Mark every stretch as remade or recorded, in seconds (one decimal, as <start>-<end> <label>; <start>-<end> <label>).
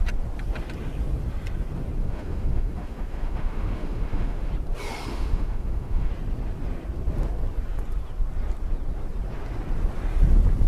0.0-2.0 recorded; 2.0-4.5 remade; 4.5-5.1 recorded; 5.1-6.1 remade; 6.1-10.7 recorded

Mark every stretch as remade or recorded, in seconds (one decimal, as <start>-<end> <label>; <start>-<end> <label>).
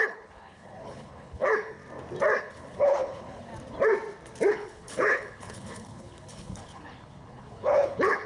0.0-1.8 remade; 1.8-2.4 recorded; 2.4-3.5 remade; 3.5-4.5 recorded; 4.5-8.3 remade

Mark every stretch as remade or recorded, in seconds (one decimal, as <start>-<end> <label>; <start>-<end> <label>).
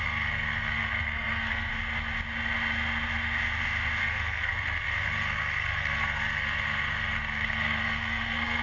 0.0-1.7 remade; 1.7-4.0 recorded; 4.0-8.6 remade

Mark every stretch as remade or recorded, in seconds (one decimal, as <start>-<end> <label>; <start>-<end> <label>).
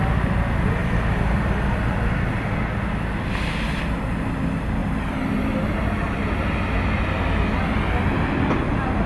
0.0-0.8 recorded; 0.8-2.5 remade; 2.5-4.8 recorded; 4.8-6.2 remade; 6.2-9.1 recorded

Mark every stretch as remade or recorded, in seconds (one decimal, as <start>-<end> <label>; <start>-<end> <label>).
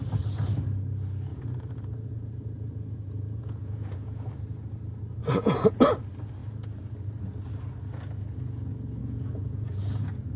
0.0-1.3 recorded; 1.3-4.2 remade; 4.2-5.2 recorded; 5.2-5.9 remade; 5.9-9.0 recorded; 9.0-9.8 remade; 9.8-10.4 recorded